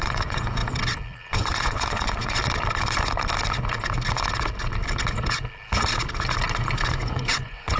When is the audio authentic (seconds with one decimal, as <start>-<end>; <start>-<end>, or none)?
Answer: 0.6-1.3; 2.4-6.9